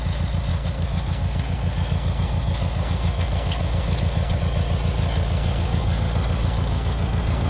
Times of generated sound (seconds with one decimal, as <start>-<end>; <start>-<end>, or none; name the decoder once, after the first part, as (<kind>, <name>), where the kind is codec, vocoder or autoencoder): 0.5-4.4 (codec, SNAC); 5.0-7.5